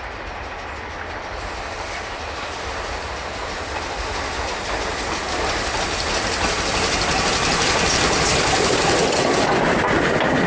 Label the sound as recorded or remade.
recorded